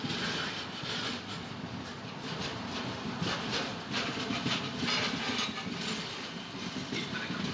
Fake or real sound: real